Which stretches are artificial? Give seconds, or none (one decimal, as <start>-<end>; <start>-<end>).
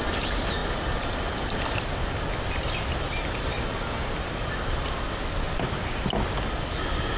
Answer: none